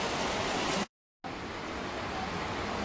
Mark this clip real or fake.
real